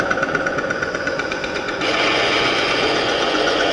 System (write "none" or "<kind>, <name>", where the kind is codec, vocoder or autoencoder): vocoder, Vocos